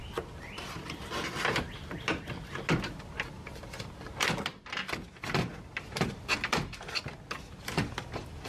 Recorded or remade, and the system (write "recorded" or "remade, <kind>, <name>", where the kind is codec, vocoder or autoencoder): recorded